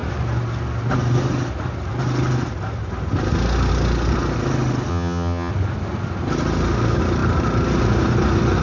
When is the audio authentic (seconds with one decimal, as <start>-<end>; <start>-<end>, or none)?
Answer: 0.0-4.9; 5.5-8.6